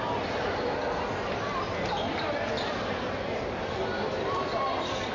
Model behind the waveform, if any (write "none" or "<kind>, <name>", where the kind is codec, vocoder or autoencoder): none